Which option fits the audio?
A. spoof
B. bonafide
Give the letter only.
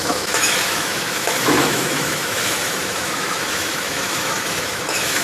A